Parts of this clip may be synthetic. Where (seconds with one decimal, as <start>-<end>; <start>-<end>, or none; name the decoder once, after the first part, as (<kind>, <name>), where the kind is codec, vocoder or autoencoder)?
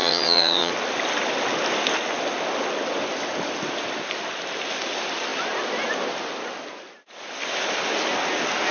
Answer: 0.0-0.7 (vocoder, HiFi-GAN)